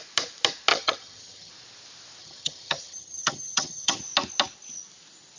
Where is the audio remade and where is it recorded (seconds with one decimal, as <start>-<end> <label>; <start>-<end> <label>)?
0.0-0.7 recorded; 0.7-1.5 remade; 1.5-2.2 recorded; 2.2-4.0 remade; 4.0-5.4 recorded